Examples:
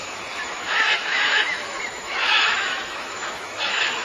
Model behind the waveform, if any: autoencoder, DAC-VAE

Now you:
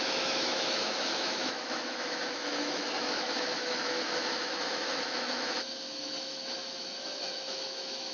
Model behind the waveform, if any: autoencoder, DAC-VAE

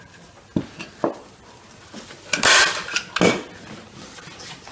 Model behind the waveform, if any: none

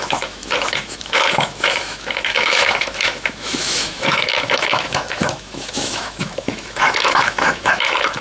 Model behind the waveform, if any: autoencoder, DAC-VAE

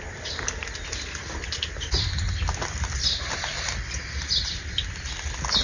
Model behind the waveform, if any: none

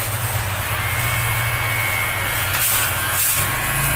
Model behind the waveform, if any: none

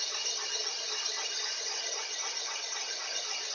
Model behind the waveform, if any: none